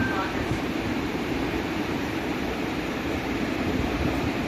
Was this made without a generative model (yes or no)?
no